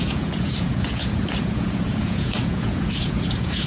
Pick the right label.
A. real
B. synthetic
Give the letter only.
B